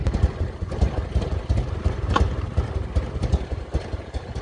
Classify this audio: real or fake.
real